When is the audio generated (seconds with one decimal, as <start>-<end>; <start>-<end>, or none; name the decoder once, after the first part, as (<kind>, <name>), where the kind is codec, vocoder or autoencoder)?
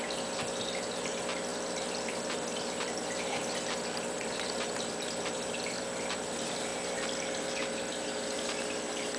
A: 1.5-6.3 (vocoder, BigVGAN v2)